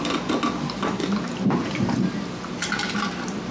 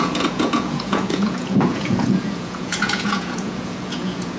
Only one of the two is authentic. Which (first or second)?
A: first